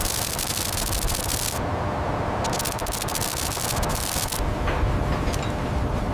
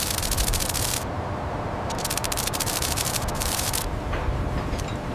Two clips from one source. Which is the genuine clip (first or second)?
first